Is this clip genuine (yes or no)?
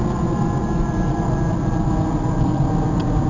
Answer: yes